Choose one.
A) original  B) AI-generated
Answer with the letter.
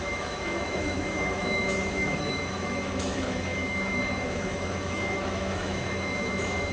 B